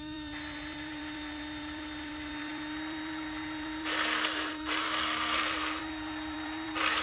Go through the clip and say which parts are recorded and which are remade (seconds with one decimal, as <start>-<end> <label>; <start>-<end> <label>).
0.0-7.0 remade